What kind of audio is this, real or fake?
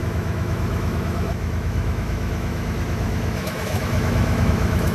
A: fake